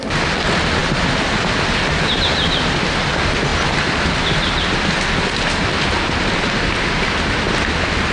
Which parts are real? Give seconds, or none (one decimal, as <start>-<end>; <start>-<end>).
0.0-8.1